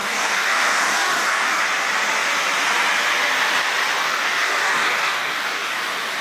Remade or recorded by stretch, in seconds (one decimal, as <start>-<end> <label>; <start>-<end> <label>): 0.0-1.6 remade; 1.6-4.0 recorded; 4.0-5.8 remade; 5.8-6.2 recorded